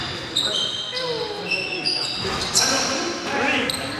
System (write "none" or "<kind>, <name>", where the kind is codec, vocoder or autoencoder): none